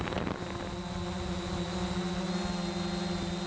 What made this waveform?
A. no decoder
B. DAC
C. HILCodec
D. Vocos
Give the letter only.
A